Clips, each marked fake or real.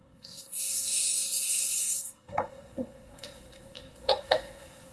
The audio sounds fake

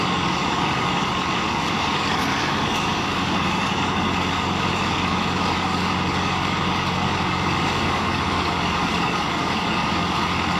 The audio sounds fake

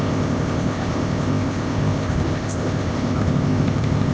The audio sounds fake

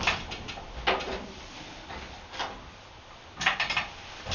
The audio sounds real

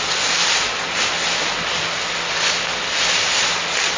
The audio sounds real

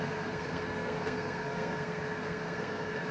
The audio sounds fake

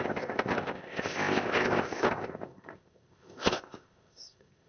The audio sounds fake